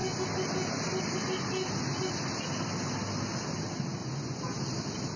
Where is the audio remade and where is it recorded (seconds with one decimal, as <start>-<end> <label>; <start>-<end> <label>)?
0.0-4.0 recorded; 4.0-4.6 remade; 4.6-5.2 recorded